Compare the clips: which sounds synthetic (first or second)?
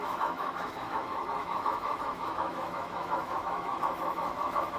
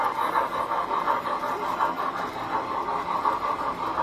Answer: first